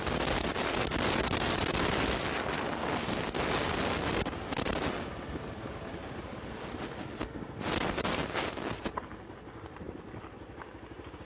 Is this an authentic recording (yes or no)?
yes